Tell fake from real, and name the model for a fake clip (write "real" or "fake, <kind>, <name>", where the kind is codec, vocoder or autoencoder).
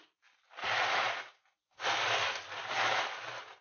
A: real